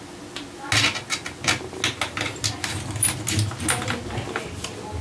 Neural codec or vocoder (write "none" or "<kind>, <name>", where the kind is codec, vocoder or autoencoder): none